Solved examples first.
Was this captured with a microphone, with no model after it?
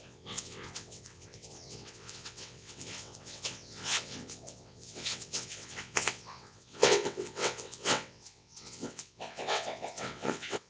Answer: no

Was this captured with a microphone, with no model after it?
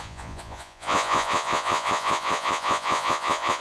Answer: no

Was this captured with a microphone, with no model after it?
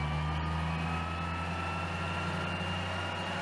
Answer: yes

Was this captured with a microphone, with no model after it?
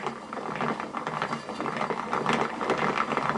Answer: yes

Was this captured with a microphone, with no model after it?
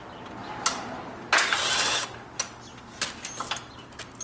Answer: yes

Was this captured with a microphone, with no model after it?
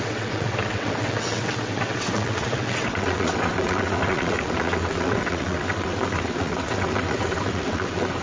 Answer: no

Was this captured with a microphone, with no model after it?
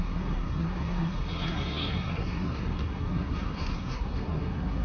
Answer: no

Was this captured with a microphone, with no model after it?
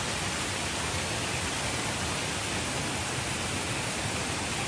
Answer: yes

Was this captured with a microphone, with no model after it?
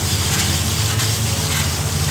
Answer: yes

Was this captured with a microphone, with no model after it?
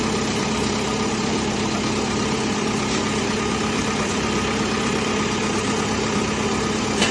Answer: no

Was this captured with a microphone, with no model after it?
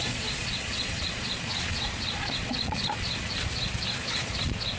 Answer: no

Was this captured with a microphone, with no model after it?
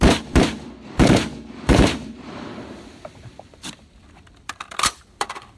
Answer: no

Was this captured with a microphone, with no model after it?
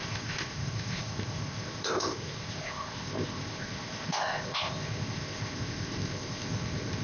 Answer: no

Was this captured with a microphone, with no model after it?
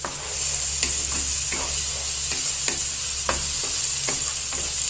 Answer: yes